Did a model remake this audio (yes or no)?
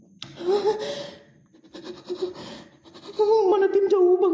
no